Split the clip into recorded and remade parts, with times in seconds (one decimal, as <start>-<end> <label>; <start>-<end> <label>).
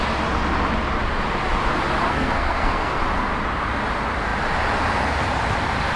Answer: 0.0-2.1 recorded; 2.1-3.0 remade; 3.0-6.0 recorded